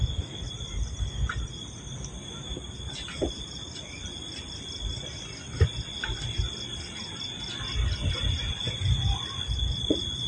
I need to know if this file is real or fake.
real